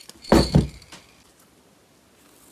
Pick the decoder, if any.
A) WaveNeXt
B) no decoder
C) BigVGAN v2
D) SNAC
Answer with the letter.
B